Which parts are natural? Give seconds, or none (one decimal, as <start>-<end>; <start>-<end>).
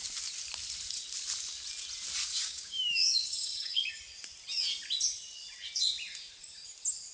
0.0-2.3; 3.9-7.1